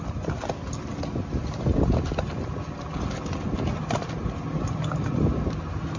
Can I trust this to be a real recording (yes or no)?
yes